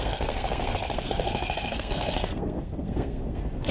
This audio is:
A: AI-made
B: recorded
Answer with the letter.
A